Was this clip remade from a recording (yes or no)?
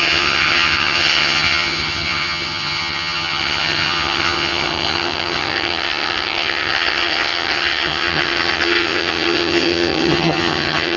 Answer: yes